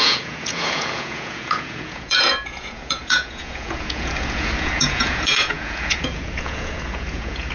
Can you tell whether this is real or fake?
fake